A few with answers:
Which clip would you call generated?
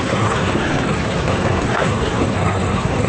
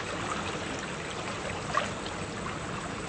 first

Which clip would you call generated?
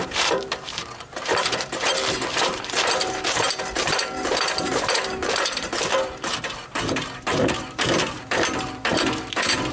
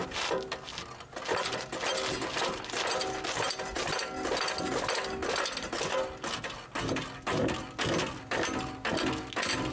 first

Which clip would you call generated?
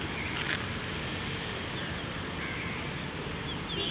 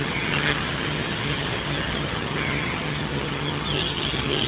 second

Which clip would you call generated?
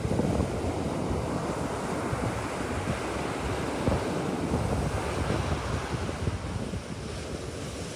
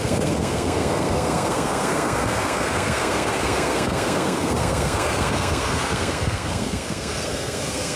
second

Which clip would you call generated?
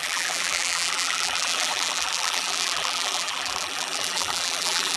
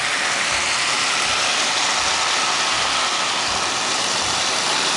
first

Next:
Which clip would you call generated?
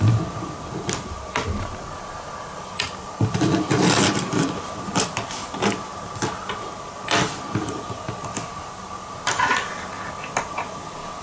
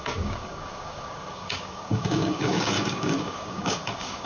second